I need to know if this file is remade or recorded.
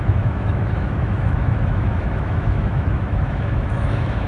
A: remade